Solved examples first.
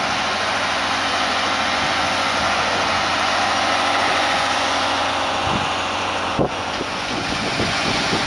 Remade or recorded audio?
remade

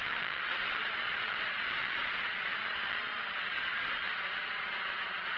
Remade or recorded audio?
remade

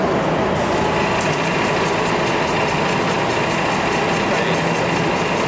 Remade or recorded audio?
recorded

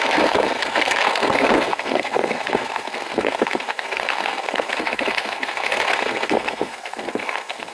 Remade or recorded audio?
remade